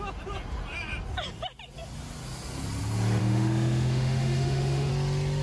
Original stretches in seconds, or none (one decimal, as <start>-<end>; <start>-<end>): 0.0-3.2; 4.9-5.4